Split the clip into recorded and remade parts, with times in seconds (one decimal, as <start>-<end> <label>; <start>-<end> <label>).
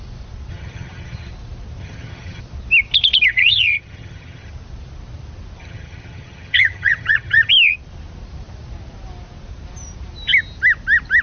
0.0-0.5 recorded; 0.5-1.3 remade; 1.3-1.8 recorded; 1.8-2.4 remade; 2.4-3.3 recorded; 3.3-4.5 remade; 4.5-5.6 recorded; 5.6-7.5 remade; 7.5-11.2 recorded